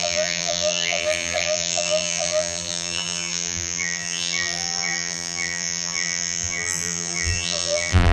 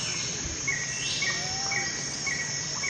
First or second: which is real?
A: second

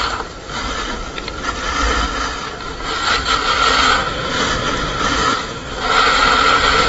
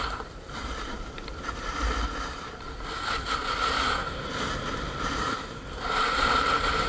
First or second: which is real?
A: first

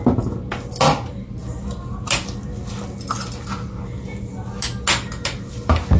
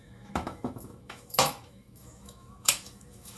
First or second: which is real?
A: first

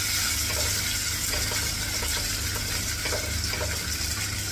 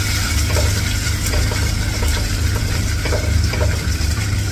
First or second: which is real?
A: first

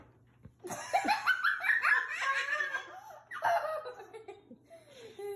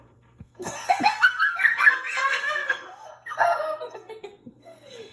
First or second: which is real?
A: first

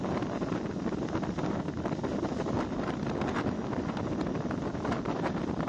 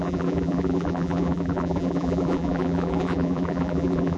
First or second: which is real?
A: first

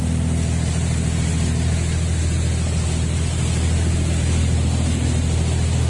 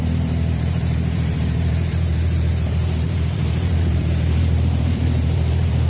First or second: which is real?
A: first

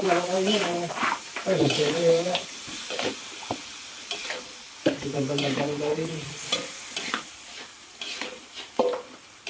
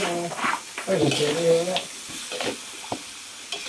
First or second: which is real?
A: second